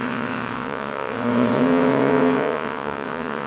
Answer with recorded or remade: remade